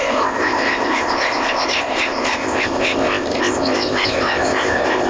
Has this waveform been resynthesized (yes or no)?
yes